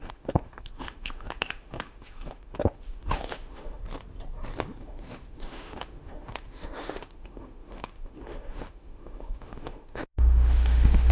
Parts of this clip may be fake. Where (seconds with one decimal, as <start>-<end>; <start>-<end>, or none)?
0.0-3.8; 4.8-11.1